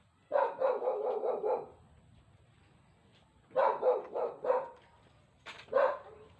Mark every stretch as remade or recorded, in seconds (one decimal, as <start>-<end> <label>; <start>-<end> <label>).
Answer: 0.0-3.1 recorded; 3.1-6.4 remade

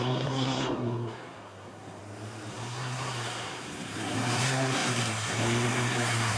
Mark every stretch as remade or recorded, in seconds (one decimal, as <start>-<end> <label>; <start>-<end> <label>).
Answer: 0.0-2.0 remade; 2.0-2.5 recorded; 2.5-6.4 remade

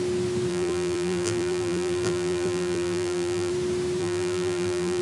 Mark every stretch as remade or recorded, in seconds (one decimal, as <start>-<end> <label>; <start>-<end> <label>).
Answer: 0.0-0.5 recorded; 0.5-3.5 remade; 3.5-4.0 recorded; 4.0-5.0 remade

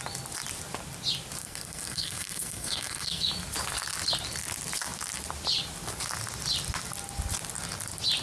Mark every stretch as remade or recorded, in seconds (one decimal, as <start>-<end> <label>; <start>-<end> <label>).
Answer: 0.0-1.4 recorded; 1.4-3.3 remade; 3.3-8.2 recorded